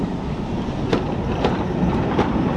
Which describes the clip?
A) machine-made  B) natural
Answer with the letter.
B